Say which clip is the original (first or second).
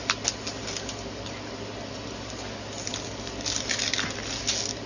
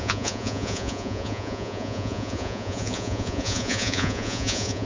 first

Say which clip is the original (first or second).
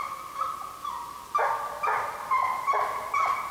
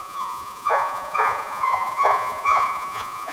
first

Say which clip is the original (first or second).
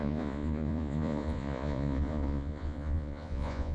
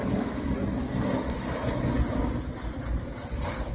second